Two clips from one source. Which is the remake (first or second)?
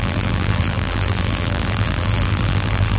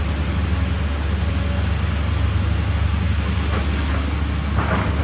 first